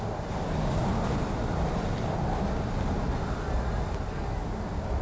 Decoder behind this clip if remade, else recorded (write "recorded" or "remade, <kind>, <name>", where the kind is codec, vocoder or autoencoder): recorded